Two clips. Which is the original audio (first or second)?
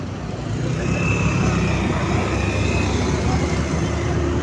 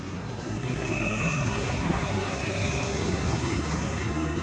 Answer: first